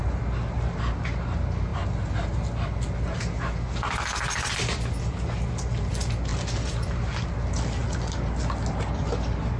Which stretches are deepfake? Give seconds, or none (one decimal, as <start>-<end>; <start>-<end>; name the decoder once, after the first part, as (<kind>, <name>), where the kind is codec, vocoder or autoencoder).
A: none